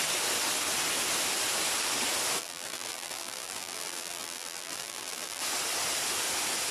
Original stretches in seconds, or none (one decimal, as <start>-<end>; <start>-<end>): 0.0-2.4; 5.4-6.7